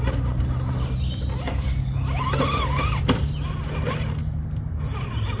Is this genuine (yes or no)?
yes